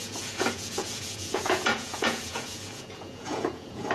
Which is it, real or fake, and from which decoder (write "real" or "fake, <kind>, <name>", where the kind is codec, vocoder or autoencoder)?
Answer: fake, vocoder, Vocos